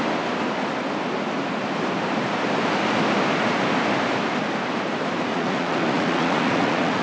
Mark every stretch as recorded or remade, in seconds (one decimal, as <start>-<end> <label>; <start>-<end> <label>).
0.0-5.3 recorded; 5.3-7.0 remade